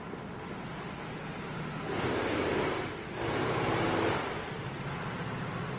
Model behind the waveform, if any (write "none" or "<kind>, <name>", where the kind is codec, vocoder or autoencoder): none